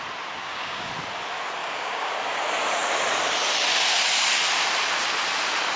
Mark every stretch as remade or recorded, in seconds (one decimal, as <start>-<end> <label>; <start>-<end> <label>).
0.0-0.4 recorded; 0.4-0.9 remade; 0.9-1.6 recorded; 1.6-2.1 remade; 2.1-5.8 recorded